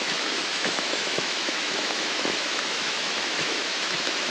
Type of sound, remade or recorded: remade